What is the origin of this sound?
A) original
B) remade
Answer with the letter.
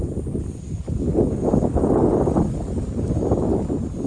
A